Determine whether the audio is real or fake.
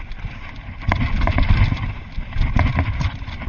real